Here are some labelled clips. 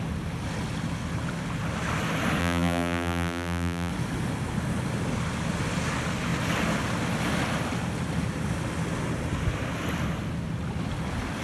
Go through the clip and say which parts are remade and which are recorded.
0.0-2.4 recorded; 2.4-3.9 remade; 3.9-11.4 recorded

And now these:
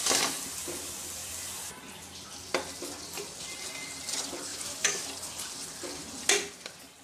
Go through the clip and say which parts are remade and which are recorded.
0.0-4.5 recorded; 4.5-5.1 remade; 5.1-7.0 recorded

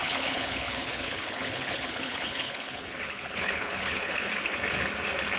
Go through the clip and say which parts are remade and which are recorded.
0.0-4.3 remade; 4.3-5.4 recorded

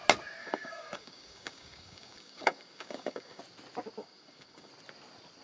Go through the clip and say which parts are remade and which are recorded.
0.0-0.4 recorded; 0.4-3.4 remade; 3.4-4.0 recorded; 4.0-4.7 remade; 4.7-5.4 recorded

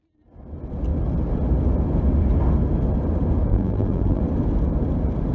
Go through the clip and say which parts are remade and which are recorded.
0.0-3.5 recorded; 3.5-4.2 remade; 4.2-5.3 recorded

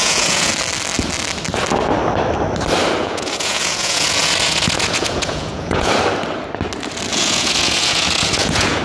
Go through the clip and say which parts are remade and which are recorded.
0.0-0.5 remade; 0.5-3.0 recorded; 3.0-5.9 remade; 5.9-7.1 recorded; 7.1-8.8 remade

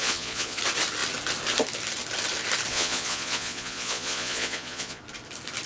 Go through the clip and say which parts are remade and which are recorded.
0.0-0.6 remade; 0.6-2.7 recorded; 2.7-5.0 remade; 5.0-5.7 recorded

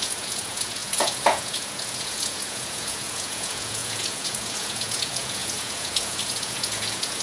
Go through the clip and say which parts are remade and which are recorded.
0.0-7.2 remade